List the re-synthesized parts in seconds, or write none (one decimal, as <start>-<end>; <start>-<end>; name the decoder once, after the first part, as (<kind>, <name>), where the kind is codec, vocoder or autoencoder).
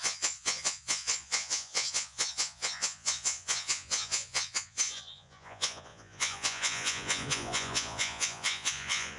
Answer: 0.0-9.2 (vocoder, Vocos)